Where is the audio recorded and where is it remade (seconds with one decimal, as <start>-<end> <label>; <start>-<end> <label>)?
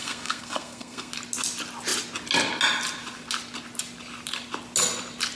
0.0-1.1 remade; 1.1-5.4 recorded